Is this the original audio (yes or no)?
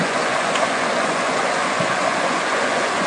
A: no